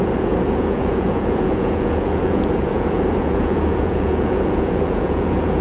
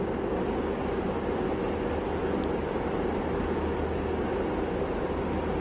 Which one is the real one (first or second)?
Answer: second